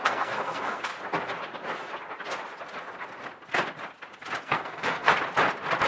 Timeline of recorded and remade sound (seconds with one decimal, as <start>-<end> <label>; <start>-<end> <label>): 0.0-0.9 remade; 0.9-4.4 recorded; 4.4-5.1 remade; 5.1-5.9 recorded